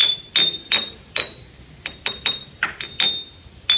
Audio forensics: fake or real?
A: real